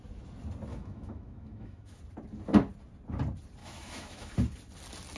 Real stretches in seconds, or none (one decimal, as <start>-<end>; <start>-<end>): 0.0-0.7; 2.0-3.6; 4.3-5.2